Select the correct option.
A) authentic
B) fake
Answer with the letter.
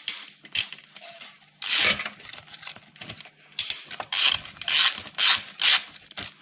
A